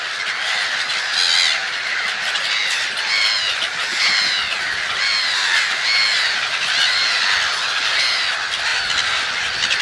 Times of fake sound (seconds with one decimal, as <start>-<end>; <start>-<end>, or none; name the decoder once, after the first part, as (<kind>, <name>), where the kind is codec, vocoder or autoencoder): none